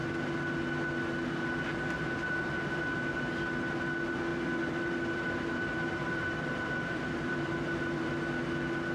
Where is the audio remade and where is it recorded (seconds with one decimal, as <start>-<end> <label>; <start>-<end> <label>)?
0.0-4.3 recorded; 4.3-8.1 remade; 8.1-8.9 recorded